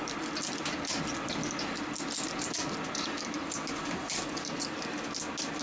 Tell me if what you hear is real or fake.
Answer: real